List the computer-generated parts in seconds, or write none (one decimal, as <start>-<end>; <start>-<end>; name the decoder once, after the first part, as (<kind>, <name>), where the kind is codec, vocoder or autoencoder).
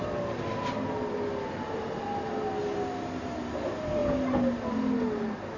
none